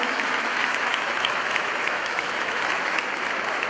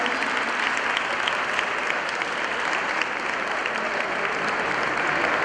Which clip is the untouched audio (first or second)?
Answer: second